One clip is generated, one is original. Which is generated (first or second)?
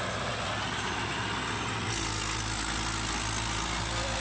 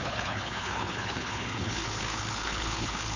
second